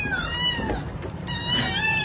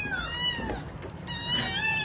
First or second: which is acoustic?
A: second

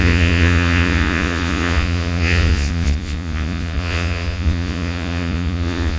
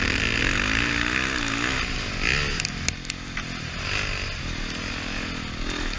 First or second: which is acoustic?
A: second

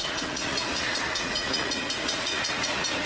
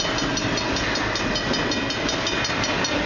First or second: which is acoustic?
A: second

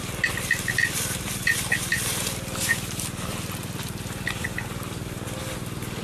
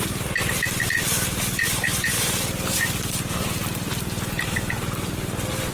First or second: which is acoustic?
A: first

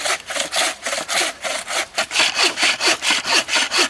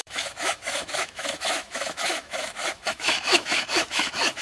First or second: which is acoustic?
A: first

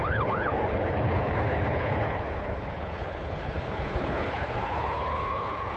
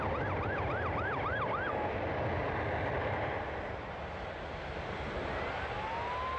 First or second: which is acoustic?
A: second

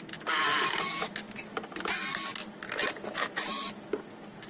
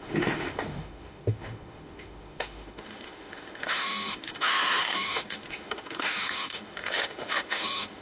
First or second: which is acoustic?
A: first